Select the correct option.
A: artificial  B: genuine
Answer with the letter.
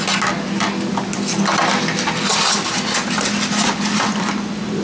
B